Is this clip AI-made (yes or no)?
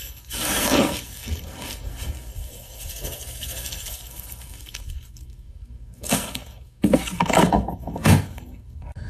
yes